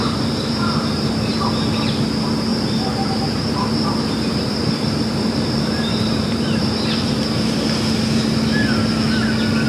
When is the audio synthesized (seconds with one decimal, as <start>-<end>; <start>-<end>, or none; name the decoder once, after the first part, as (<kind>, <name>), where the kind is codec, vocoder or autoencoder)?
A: 0.0-1.1 (vocoder, BigVGAN v2); 2.5-6.7